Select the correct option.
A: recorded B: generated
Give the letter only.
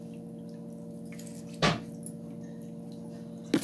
A